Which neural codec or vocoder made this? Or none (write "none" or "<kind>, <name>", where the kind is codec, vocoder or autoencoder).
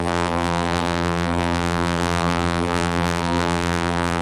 vocoder, BigVGAN v2